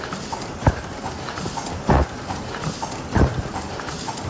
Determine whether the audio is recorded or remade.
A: recorded